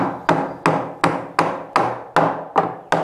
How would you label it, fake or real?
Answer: real